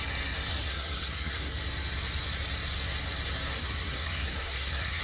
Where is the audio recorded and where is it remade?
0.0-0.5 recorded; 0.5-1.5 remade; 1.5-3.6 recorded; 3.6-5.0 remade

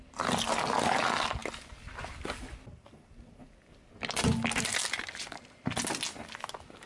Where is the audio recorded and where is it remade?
0.0-6.9 recorded